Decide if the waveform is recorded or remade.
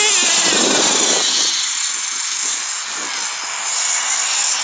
recorded